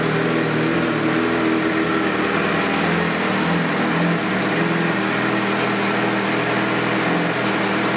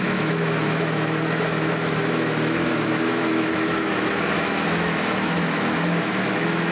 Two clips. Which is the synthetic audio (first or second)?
second